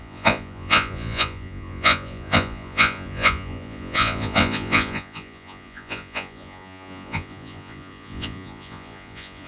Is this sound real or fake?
fake